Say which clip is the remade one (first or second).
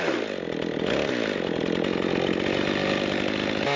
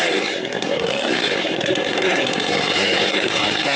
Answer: second